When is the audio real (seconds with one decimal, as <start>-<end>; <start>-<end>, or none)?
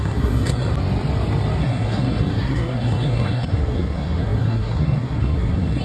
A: 0.7-1.6